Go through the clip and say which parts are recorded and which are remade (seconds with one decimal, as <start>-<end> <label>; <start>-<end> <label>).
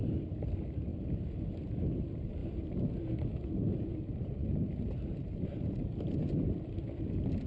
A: 0.0-0.9 remade; 0.9-1.5 recorded; 1.5-2.4 remade; 2.4-3.5 recorded; 3.5-7.5 remade